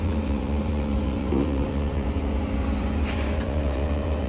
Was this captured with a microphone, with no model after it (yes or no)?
no